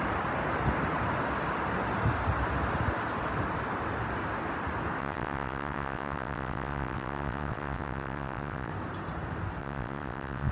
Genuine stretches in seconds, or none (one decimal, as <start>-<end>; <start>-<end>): 0.0-5.0; 8.7-9.6